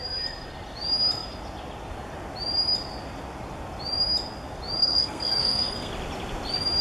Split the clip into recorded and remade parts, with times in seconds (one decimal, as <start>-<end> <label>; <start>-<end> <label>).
0.0-4.8 recorded; 4.8-5.9 remade; 5.9-6.8 recorded